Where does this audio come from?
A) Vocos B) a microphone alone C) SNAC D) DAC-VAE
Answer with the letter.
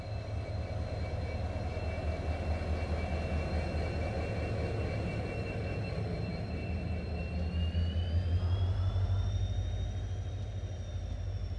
B